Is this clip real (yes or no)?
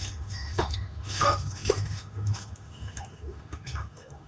no